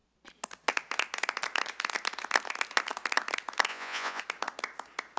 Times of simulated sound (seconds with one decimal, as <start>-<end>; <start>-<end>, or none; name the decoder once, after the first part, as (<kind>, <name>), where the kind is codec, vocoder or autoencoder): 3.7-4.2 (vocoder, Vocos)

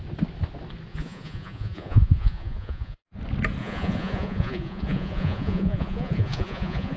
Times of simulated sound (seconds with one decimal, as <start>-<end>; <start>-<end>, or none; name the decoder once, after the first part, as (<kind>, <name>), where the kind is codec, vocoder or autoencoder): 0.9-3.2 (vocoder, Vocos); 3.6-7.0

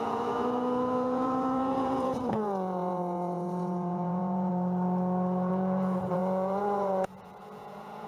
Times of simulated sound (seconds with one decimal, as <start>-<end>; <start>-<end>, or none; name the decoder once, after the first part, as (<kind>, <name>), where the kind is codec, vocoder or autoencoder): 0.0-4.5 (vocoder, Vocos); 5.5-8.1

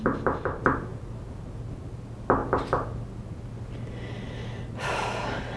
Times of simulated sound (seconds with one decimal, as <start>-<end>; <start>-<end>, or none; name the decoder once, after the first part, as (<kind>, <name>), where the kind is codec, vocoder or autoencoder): none

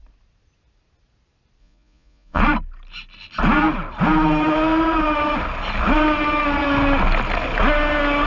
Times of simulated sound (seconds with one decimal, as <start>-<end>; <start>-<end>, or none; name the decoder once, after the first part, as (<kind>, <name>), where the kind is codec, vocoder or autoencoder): 1.6-2.4 (vocoder, Vocos)